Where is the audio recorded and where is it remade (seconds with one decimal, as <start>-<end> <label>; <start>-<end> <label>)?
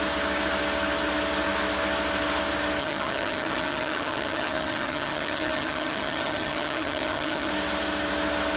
0.0-2.8 recorded; 2.8-7.5 remade; 7.5-8.6 recorded